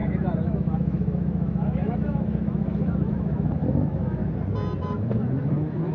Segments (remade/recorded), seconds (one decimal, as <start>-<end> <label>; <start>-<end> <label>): 0.0-4.2 remade; 4.2-4.8 recorded; 4.8-5.9 remade